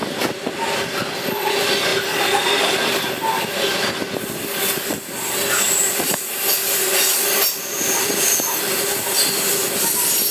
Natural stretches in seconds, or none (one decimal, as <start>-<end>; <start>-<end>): 0.0-10.3